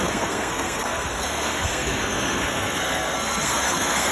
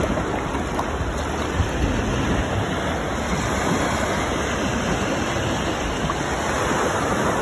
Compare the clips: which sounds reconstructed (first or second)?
first